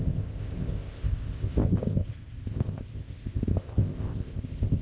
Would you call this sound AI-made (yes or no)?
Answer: yes